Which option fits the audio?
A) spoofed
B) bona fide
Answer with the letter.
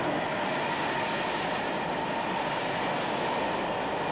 B